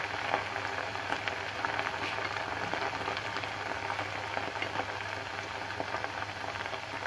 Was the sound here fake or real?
real